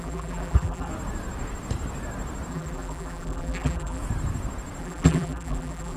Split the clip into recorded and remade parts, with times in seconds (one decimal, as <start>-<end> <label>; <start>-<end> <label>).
0.0-0.9 remade; 0.9-2.5 recorded; 2.5-4.0 remade; 4.0-4.8 recorded; 4.8-6.0 remade